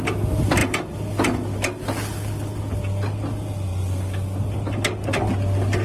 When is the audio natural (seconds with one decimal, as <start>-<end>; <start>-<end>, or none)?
none